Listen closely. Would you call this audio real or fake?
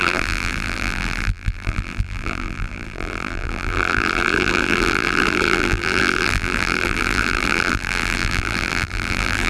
fake